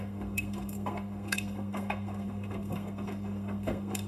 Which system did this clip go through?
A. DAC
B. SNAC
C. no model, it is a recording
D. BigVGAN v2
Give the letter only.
B